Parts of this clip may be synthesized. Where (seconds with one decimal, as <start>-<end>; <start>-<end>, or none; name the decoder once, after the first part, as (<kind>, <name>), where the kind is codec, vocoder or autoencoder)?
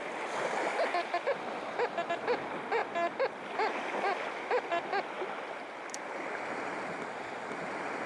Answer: none